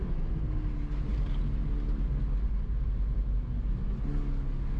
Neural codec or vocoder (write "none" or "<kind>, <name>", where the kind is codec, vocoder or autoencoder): none